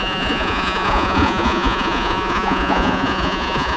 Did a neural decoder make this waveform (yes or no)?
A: yes